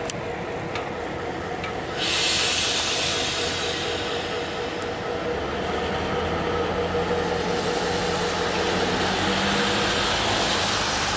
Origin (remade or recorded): recorded